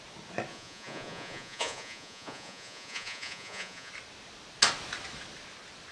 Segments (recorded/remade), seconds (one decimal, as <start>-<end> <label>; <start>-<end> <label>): 0.0-0.5 recorded; 0.5-3.9 remade; 3.9-5.9 recorded